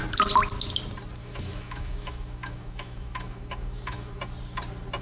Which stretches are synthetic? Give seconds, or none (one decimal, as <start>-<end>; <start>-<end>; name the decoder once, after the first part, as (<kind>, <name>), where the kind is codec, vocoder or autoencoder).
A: 1.2-4.2 (autoencoder, DAC-VAE)